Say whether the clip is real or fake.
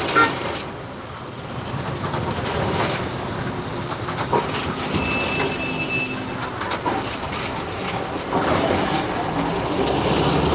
real